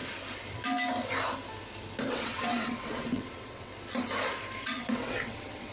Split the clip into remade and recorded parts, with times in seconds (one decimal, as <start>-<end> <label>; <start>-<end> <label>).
0.0-2.1 recorded; 2.1-3.7 remade; 3.7-4.6 recorded; 4.6-5.7 remade